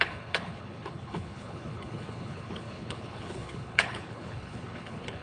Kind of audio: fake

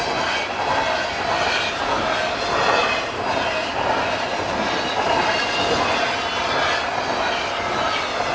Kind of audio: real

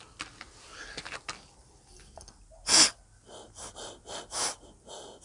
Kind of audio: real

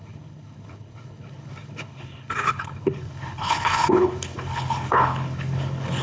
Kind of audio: fake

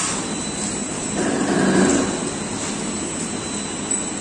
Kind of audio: real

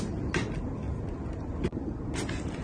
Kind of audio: real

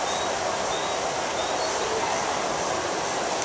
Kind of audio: real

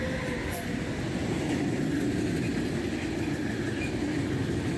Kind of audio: real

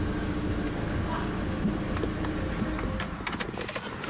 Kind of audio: real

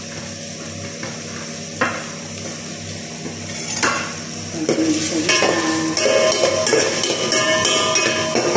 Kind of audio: real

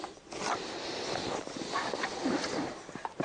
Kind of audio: real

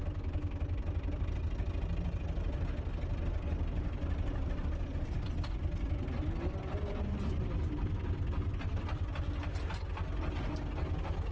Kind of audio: real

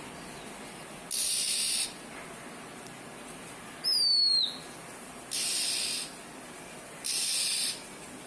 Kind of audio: real